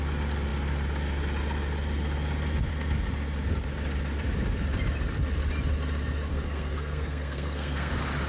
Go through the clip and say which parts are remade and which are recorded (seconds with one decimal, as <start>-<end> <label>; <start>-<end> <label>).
0.0-6.3 recorded; 6.3-7.9 remade; 7.9-8.3 recorded